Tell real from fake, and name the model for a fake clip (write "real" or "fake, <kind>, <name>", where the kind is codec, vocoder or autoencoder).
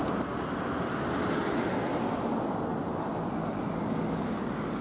real